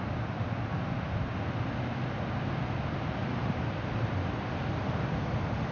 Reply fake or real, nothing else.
real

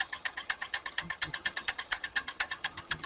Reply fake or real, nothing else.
fake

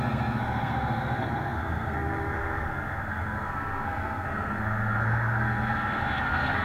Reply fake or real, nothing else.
fake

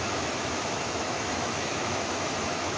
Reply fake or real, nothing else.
fake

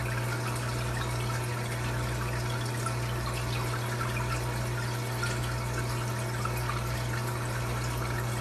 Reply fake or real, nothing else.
real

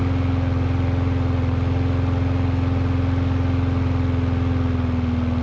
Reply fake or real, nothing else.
real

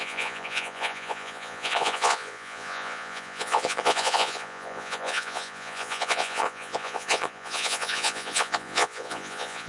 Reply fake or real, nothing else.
fake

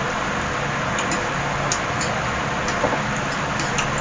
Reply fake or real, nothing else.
real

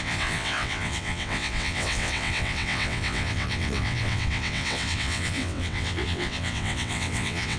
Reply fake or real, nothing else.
fake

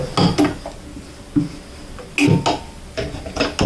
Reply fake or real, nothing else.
real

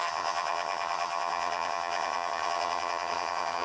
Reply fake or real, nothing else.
fake